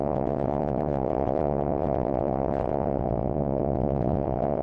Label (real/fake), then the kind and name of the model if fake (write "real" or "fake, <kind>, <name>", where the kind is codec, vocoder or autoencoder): fake, vocoder, WaveNeXt